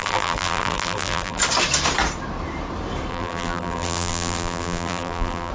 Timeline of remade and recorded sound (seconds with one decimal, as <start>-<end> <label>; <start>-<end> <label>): 0.0-1.4 remade; 1.4-3.1 recorded; 3.1-5.5 remade